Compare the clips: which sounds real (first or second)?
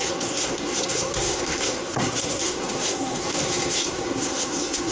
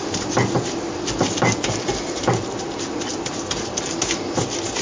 second